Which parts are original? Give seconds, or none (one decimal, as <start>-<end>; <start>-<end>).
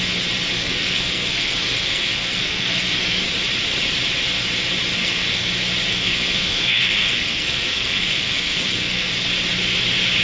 0.0-0.6; 3.2-5.0; 5.5-5.9; 9.1-10.2